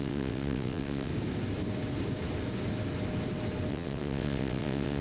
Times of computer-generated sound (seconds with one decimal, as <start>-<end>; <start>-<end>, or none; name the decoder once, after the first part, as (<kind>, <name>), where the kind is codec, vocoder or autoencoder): 0.0-1.1 (vocoder, WaveNeXt); 3.7-5.0